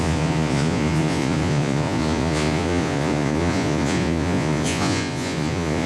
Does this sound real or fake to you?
fake